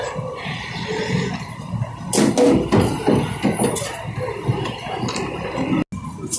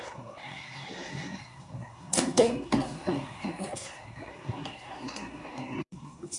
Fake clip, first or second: second